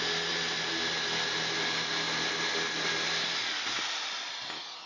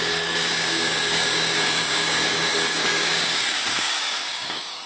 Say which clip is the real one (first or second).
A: first